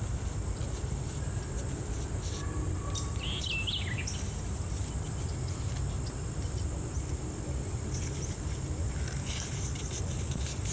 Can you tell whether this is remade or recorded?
recorded